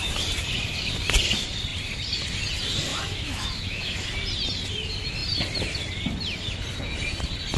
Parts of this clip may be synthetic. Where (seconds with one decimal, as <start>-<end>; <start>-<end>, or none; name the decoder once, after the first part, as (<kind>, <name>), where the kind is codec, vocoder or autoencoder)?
2.9-4.1 (autoencoder, DAC-VAE)